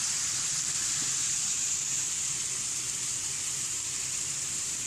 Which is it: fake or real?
fake